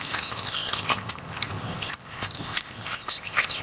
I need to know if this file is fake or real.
fake